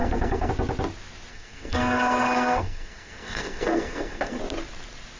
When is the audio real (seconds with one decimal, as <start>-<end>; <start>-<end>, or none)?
0.5-1.3; 4.4-5.2